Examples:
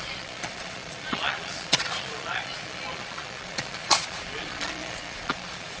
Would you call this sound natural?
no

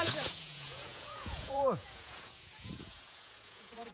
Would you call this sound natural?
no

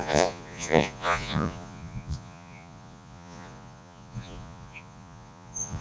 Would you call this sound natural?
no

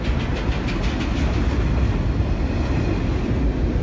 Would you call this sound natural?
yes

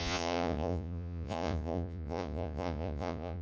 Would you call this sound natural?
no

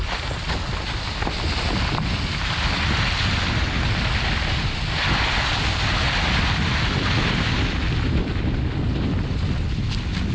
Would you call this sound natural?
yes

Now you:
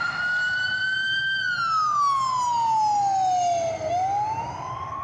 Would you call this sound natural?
yes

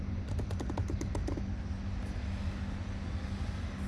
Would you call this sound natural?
yes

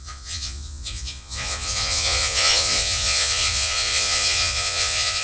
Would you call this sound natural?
no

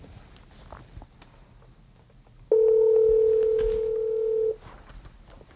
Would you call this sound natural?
yes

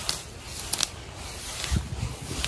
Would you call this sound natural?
yes